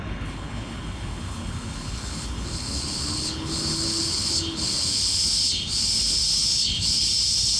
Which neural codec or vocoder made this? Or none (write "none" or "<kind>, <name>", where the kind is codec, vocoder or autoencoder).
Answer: codec, HILCodec